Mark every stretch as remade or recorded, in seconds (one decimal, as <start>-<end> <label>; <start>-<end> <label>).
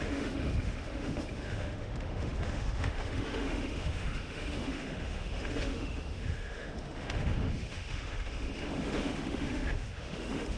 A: 0.0-10.6 remade